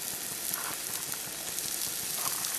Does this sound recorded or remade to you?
recorded